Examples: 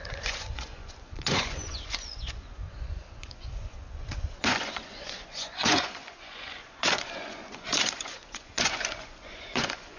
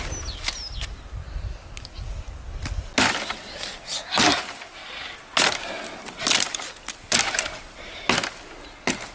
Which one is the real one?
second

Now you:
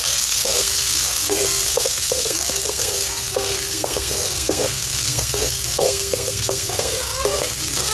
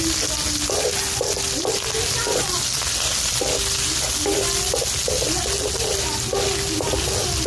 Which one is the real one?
second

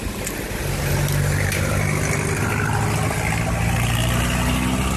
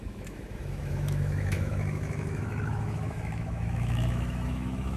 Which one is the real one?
first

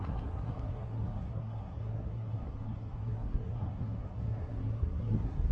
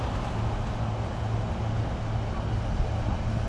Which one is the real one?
second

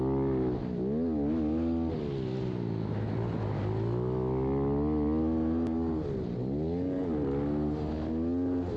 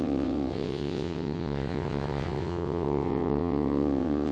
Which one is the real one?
first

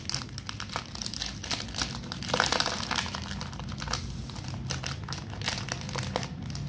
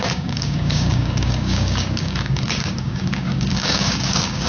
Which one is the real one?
first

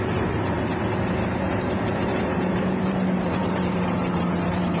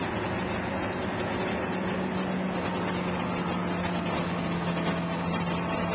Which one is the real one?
second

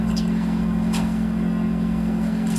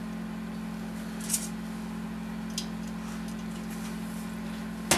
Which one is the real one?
second